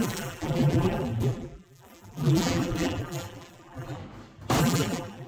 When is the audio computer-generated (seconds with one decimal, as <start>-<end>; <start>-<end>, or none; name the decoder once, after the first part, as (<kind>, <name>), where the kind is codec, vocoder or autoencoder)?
0.0-4.0 (vocoder, BigVGAN v2); 4.6-5.3